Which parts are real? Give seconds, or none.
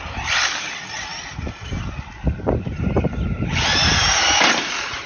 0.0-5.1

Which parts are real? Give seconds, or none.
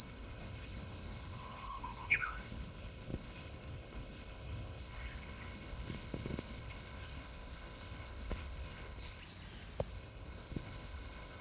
9.2-9.9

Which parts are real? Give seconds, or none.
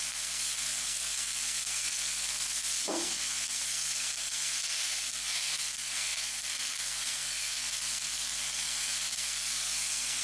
none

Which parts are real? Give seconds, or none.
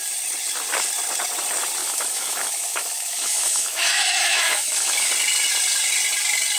0.0-1.8; 5.1-6.6